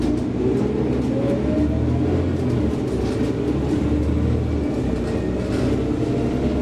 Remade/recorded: recorded